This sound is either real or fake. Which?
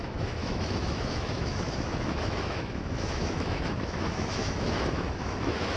fake